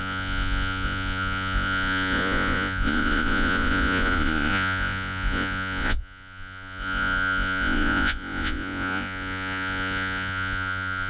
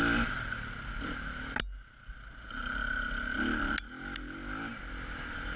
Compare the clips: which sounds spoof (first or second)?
first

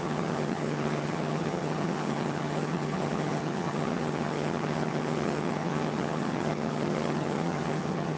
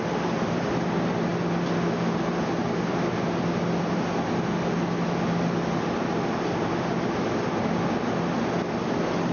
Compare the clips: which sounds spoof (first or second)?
first